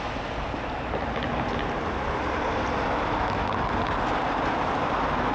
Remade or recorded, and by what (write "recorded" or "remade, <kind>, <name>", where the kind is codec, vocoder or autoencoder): recorded